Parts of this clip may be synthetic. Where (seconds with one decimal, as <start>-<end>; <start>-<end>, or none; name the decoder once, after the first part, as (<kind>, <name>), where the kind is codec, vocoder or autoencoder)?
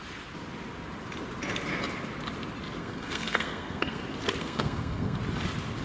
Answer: 2.8-4.0 (codec, SNAC); 4.4-5.2